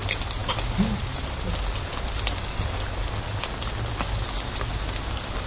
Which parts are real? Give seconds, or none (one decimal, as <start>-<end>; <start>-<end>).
0.0-5.5

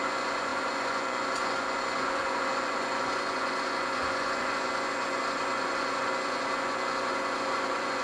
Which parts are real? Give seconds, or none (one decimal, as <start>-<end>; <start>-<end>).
none

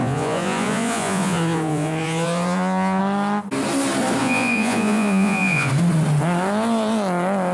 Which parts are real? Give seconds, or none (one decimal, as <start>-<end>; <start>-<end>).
3.0-4.2; 5.7-7.5

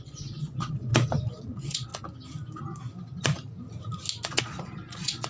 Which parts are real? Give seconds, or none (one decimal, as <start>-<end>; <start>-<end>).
0.9-1.4; 1.9-4.4

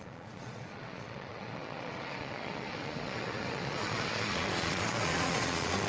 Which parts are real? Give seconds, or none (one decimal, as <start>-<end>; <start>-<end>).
none